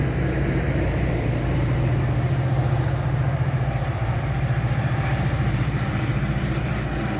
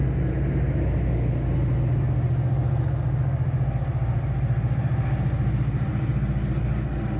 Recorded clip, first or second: second